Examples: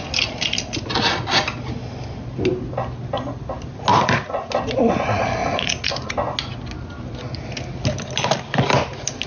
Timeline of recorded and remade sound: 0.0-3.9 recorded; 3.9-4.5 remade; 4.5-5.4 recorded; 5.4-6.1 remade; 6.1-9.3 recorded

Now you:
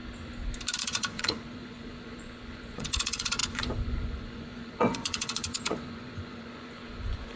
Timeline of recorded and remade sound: 0.0-0.8 recorded; 0.8-7.4 remade

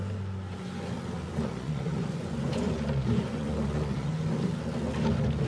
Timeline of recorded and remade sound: 0.0-1.3 recorded; 1.3-4.1 remade; 4.1-5.5 recorded

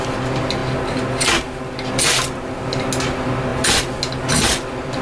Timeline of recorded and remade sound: 0.0-5.0 recorded